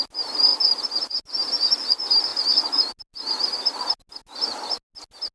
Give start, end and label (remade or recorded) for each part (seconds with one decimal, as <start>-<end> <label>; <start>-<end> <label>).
0.0-5.3 recorded